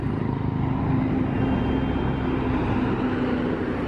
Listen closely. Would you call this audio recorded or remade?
recorded